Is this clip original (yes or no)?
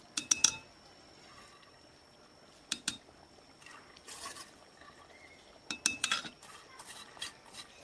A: yes